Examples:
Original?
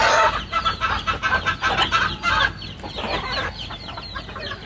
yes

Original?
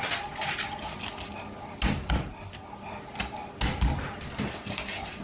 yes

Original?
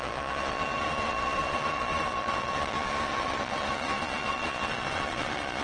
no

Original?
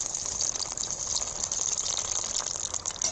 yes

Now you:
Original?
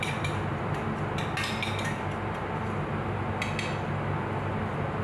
yes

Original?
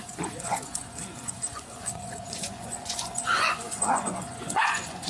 no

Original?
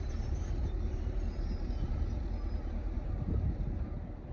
no